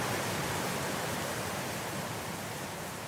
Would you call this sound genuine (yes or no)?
yes